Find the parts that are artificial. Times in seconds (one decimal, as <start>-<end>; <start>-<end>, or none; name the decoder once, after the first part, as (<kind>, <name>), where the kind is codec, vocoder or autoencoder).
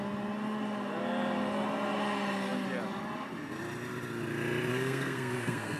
4.7-5.8 (codec, SNAC)